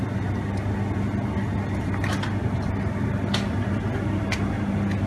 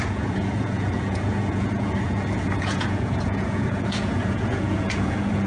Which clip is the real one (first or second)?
first